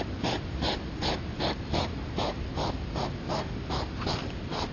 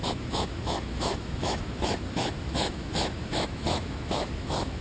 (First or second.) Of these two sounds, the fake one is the second